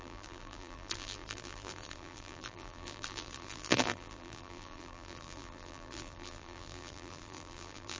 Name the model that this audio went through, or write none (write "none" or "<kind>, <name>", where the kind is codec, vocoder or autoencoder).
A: vocoder, BigVGAN v2